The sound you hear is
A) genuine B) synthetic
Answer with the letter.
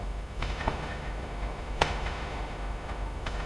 B